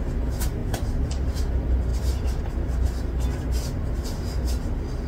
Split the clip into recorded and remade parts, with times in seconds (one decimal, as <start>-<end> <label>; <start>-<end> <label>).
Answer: 0.0-0.6 recorded; 0.6-1.5 remade; 1.5-5.1 recorded